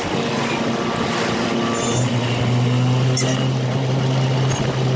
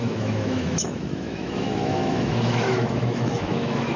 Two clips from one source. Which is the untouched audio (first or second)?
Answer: first